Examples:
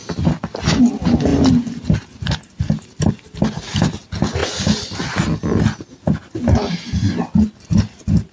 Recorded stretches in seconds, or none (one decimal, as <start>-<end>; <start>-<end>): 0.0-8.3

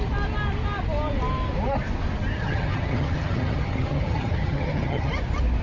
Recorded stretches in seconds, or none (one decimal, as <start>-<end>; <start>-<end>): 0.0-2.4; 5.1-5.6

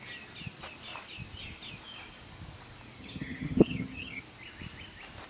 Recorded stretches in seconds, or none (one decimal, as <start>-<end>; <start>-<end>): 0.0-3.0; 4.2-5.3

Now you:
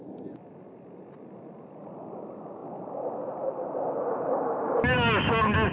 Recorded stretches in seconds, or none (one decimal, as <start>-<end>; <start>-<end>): 0.0-5.7

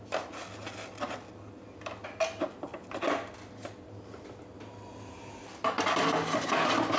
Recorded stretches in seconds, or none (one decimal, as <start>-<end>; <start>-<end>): 0.0-7.0